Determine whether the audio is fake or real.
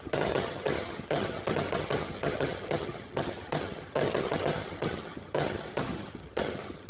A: fake